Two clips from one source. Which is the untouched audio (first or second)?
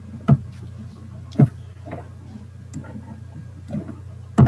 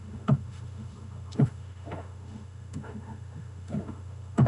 first